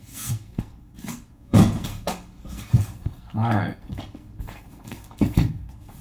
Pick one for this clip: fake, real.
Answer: fake